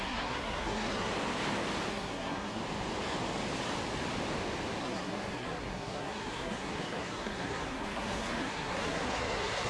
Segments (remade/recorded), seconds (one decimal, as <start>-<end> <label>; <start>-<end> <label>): 0.0-1.1 remade; 1.1-1.9 recorded; 1.9-2.6 remade; 2.6-4.8 recorded; 4.8-9.7 remade